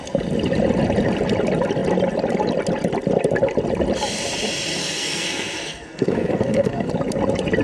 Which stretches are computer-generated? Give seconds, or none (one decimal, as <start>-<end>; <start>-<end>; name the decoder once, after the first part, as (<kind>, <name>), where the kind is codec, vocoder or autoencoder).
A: 4.8-6.9 (codec, SNAC)

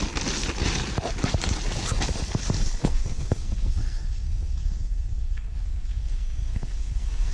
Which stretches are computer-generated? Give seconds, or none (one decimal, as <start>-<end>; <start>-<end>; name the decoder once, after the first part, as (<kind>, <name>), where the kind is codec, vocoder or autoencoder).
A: 2.8-7.3 (codec, SNAC)

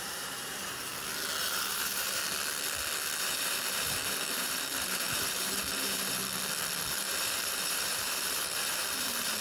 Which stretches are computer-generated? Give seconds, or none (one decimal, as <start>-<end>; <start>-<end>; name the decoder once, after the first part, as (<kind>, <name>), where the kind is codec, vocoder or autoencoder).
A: 0.0-0.9 (vocoder, BigVGAN v2); 1.4-2.2; 3.2-6.2; 6.9-9.4

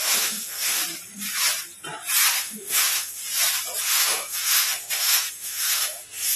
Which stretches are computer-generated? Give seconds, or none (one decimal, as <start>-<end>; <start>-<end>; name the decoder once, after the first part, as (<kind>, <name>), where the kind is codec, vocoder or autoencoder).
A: 0.0-0.8 (autoencoder, DAC-VAE); 2.3-3.2; 3.8-6.4

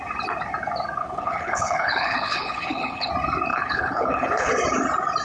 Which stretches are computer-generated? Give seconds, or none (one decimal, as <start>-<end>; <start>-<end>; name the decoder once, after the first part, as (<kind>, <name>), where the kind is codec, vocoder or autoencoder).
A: 1.0-3.1 (codec, HILCodec); 3.5-4.5

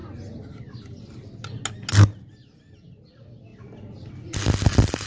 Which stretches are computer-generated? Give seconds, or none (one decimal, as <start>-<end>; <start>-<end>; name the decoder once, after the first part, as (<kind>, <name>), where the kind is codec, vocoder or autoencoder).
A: 3.5-4.1 (vocoder, BigVGAN v2)

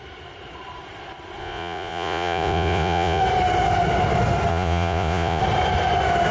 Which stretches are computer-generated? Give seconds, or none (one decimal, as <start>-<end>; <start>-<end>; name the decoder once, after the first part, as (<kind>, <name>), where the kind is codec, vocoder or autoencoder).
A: 1.4-3.2 (vocoder, Vocos); 4.5-5.4